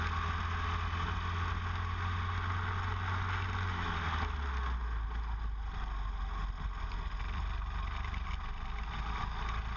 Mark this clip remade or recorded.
recorded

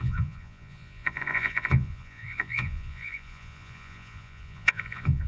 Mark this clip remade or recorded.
remade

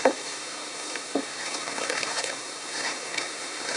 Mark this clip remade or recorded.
remade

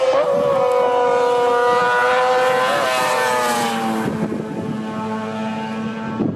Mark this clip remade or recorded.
recorded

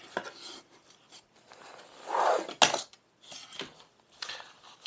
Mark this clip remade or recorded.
recorded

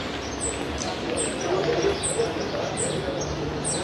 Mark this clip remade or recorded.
recorded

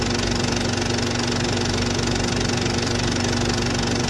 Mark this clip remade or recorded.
recorded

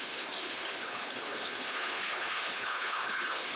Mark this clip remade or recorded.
remade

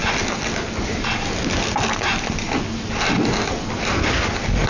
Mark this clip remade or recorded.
recorded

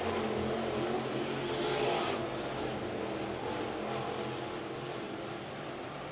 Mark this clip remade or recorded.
recorded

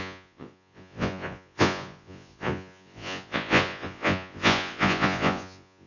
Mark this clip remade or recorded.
remade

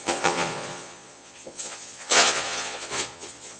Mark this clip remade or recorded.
remade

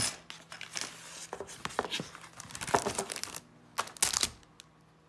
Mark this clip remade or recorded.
recorded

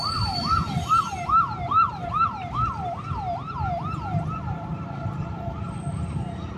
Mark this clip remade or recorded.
recorded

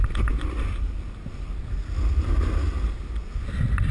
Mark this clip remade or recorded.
recorded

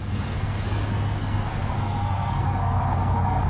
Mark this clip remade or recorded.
remade